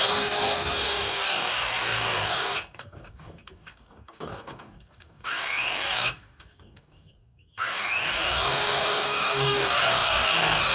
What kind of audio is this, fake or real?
fake